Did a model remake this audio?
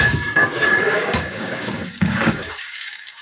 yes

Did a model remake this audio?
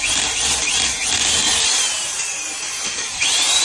no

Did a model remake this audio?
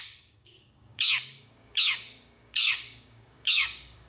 yes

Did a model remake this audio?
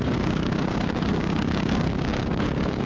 yes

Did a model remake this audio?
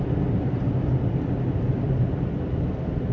no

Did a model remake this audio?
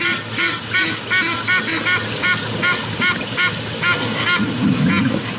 no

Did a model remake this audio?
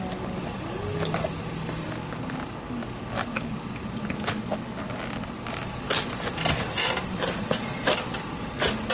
no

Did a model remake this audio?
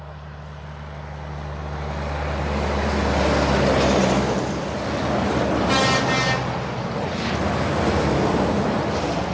no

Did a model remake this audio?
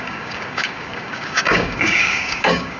yes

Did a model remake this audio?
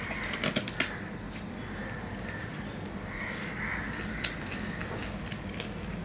no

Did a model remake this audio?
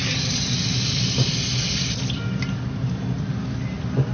no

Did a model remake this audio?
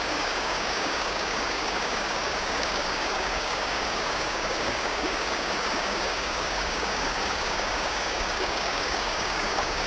yes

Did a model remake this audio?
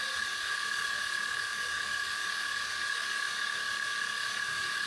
yes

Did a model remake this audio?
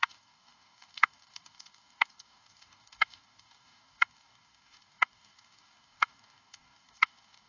yes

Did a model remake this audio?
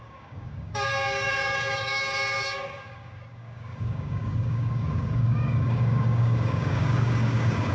yes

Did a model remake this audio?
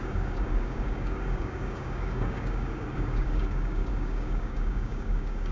yes